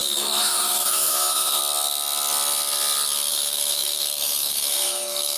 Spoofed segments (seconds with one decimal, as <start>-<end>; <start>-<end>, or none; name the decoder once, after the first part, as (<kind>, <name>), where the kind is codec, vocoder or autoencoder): 0.0-1.6 (autoencoder, DAC-VAE); 3.3-5.4